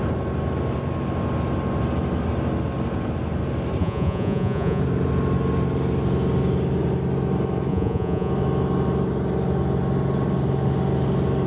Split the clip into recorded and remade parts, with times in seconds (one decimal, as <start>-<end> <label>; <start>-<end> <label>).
0.0-3.8 recorded; 3.8-4.8 remade; 4.8-7.7 recorded; 7.7-8.3 remade; 8.3-11.5 recorded